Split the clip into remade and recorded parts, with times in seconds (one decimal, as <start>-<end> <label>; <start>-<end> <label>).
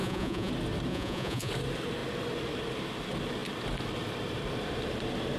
0.0-0.5 remade; 0.5-0.9 recorded; 0.9-1.5 remade; 1.5-5.4 recorded